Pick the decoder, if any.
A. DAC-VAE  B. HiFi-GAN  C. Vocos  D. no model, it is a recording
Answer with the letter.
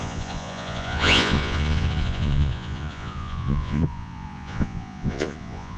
C